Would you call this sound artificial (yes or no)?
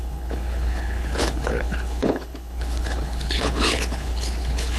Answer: yes